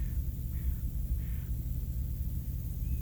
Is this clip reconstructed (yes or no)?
no